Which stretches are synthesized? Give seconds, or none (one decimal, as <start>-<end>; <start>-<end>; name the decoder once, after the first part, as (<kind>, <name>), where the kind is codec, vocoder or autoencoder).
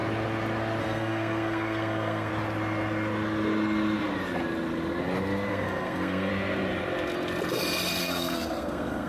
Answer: 0.8-2.3 (codec, SNAC); 5.5-6.3; 8.0-9.1